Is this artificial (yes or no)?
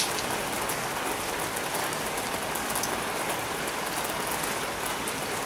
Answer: no